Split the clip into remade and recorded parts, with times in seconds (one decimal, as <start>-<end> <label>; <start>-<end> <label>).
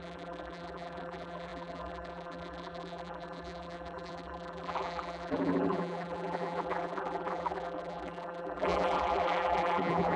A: 0.0-10.2 remade